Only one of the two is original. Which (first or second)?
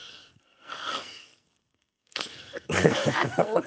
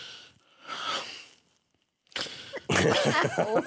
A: second